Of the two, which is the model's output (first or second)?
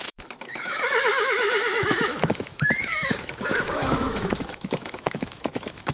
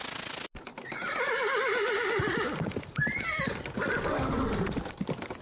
first